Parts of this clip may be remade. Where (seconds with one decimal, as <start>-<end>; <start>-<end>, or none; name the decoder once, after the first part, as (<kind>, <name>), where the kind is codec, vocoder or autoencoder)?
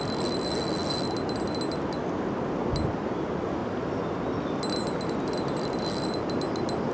none